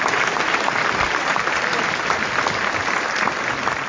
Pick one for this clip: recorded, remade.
recorded